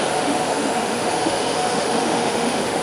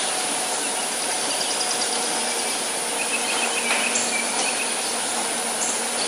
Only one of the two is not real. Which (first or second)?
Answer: first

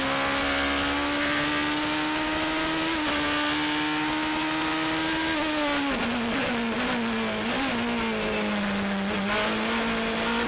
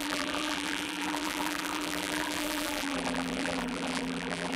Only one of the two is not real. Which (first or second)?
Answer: second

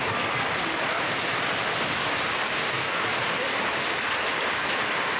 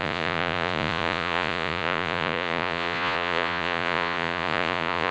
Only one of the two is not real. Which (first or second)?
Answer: second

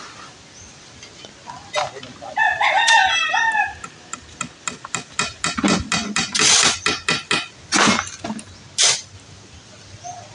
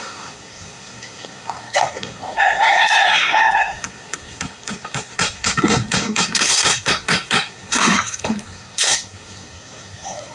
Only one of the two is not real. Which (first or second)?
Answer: second